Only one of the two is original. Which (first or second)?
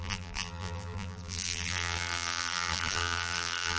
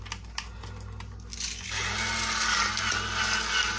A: second